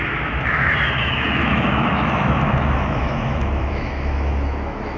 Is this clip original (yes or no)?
no